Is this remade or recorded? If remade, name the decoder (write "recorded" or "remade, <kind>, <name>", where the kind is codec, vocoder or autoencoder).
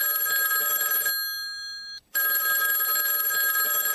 recorded